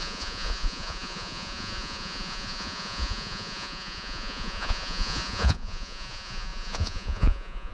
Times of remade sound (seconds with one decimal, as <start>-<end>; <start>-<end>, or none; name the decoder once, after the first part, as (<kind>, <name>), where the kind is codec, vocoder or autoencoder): 0.0-7.7 (vocoder, Vocos)